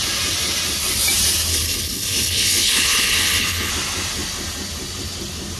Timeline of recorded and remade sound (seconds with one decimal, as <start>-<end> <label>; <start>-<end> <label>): 0.0-1.5 recorded; 1.5-3.7 remade; 3.7-5.6 recorded